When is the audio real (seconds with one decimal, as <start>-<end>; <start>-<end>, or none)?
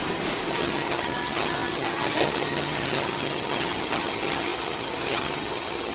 0.0-0.5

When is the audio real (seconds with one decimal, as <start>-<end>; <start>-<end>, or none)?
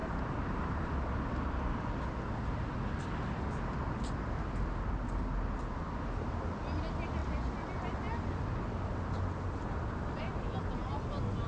0.9-11.5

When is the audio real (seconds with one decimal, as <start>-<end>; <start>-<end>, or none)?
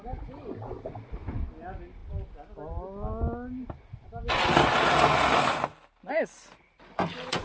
0.0-7.4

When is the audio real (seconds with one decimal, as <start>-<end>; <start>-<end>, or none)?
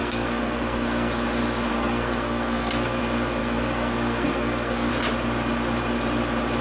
1.1-1.7; 3.0-3.4; 4.9-6.6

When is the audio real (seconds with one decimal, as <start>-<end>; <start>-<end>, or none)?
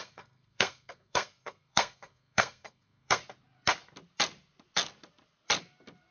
3.2-6.1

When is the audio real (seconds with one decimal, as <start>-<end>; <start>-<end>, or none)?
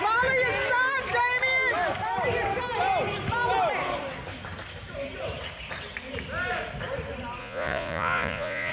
0.0-7.4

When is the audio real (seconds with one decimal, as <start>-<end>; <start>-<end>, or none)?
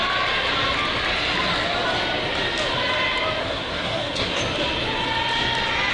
0.0-3.4; 4.4-5.9